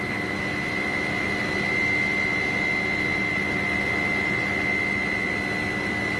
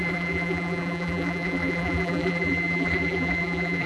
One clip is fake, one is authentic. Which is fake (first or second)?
second